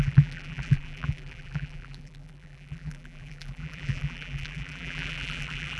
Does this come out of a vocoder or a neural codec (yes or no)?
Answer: yes